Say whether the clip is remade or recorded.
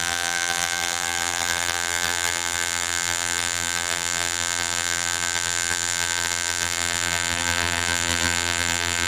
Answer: remade